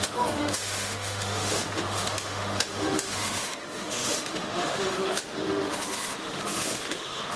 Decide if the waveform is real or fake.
fake